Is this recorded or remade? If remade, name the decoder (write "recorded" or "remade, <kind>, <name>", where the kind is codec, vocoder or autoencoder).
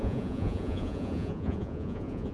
remade, vocoder, Vocos